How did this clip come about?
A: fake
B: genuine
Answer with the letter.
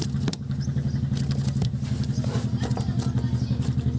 B